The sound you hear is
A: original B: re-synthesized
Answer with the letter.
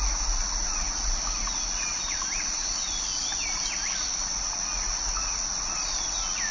A